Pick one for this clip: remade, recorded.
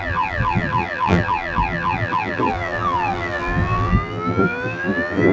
remade